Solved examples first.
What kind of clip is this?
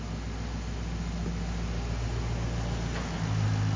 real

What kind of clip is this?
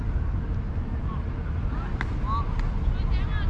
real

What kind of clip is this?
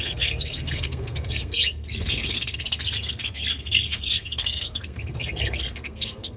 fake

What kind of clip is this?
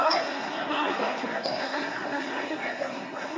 fake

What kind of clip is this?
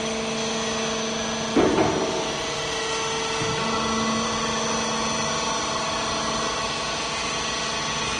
real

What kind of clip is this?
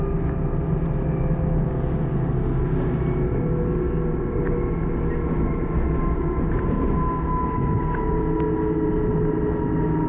real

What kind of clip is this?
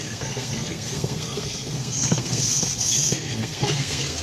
fake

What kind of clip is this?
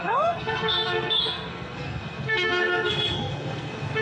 fake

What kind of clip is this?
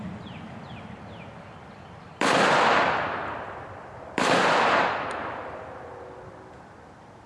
fake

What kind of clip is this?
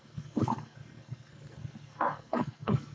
fake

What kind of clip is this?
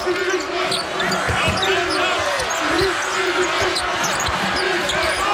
real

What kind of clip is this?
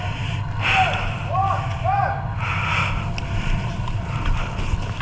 real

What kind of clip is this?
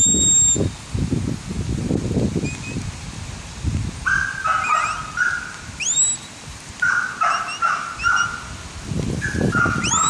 real